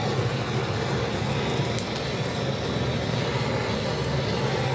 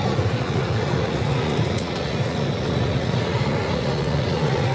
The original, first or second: first